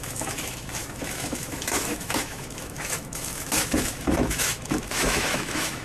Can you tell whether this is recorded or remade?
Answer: remade